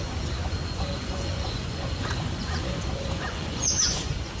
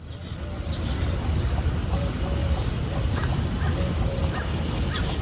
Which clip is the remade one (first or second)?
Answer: first